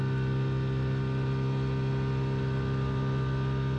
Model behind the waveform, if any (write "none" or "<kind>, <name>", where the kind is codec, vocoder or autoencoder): none